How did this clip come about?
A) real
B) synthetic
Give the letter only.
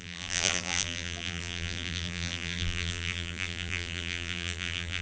B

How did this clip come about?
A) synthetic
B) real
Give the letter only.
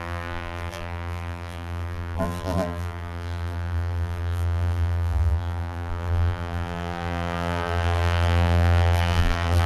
A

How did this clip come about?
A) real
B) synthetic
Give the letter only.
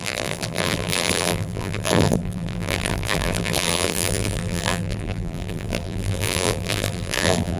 B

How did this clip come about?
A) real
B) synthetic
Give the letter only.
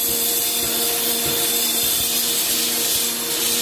B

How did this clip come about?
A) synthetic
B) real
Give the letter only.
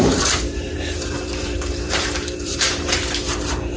A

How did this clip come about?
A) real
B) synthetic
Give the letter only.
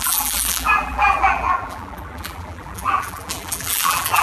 B